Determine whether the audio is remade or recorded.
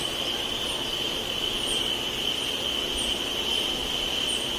recorded